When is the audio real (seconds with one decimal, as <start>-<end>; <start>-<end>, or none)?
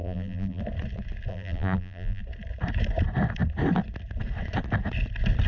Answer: 0.6-1.3; 2.2-5.5